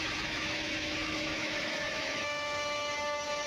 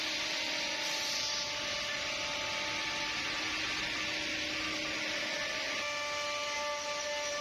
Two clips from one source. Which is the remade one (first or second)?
first